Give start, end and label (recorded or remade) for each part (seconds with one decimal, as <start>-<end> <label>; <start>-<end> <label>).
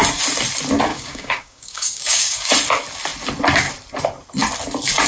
0.0-0.9 recorded; 0.9-2.5 remade; 2.5-5.1 recorded